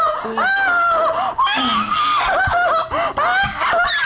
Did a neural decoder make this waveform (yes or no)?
no